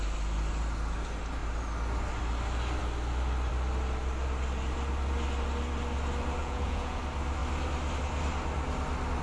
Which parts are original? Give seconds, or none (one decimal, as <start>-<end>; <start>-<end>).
0.0-6.4; 7.0-9.2